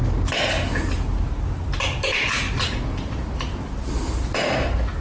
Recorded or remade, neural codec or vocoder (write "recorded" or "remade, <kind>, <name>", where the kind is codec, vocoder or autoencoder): recorded